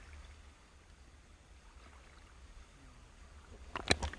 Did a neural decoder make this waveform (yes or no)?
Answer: no